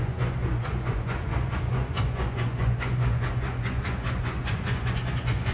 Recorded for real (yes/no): no